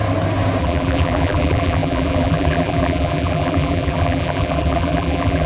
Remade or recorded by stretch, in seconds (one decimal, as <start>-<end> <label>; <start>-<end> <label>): 0.0-0.6 recorded; 0.6-5.5 remade